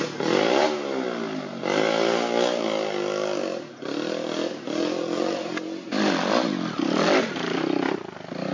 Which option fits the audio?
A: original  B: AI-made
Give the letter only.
A